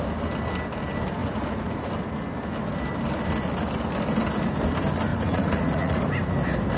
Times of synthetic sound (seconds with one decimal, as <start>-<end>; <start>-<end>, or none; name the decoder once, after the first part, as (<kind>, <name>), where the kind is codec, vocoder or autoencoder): 1.2-1.9 (vocoder, Vocos); 5.1-6.0